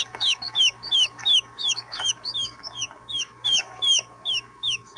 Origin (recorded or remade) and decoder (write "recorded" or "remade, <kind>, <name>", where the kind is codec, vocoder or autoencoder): remade, codec, DAC